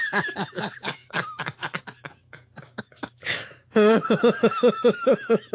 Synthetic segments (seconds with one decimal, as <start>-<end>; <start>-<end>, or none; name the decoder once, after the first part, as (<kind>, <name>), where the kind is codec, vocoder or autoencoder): 0.0-5.5 (autoencoder, DAC-VAE)